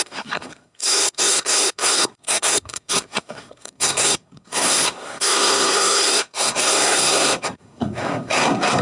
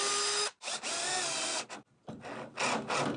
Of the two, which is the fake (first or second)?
first